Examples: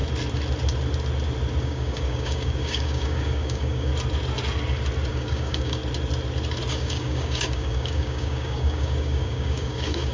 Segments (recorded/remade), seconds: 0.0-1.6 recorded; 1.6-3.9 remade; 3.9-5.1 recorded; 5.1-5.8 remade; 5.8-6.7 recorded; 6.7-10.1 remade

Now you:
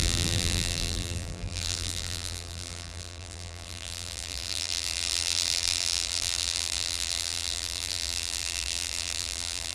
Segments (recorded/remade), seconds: 0.0-9.7 remade

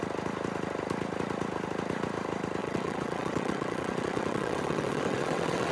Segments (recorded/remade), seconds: 0.0-2.6 recorded; 2.6-5.7 remade

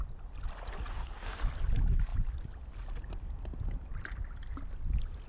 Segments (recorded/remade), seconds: 0.0-0.9 recorded; 0.9-1.4 remade; 1.4-5.3 recorded

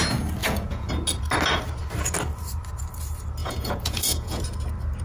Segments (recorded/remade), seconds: 0.0-0.4 recorded; 0.4-0.9 remade; 0.9-3.4 recorded; 3.4-4.4 remade; 4.4-5.0 recorded

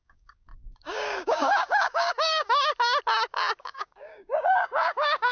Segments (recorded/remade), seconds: 0.0-2.7 remade; 2.7-3.6 recorded; 3.6-5.3 remade

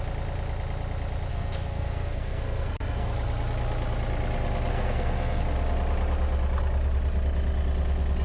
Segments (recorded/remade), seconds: 0.0-1.3 recorded; 1.3-3.1 remade; 3.1-4.7 recorded; 4.7-5.4 remade; 5.4-8.2 recorded